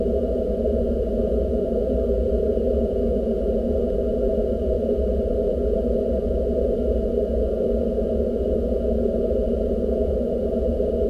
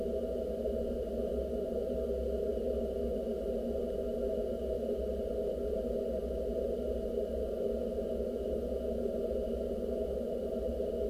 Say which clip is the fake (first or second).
first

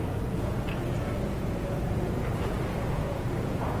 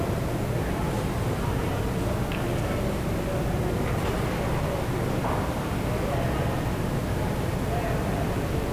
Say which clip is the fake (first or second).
first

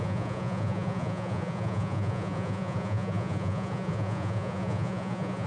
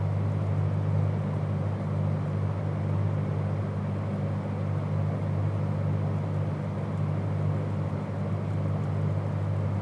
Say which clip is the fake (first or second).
first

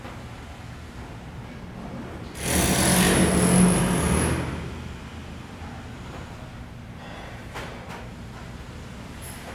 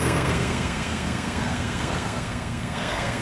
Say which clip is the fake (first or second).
second